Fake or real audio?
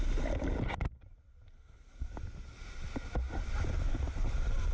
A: real